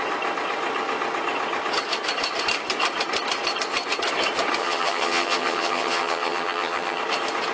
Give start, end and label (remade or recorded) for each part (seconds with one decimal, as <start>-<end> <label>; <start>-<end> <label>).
0.0-4.6 recorded; 4.6-7.0 remade; 7.0-7.5 recorded